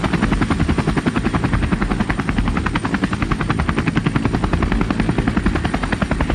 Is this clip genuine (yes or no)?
yes